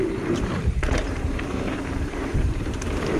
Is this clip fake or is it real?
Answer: fake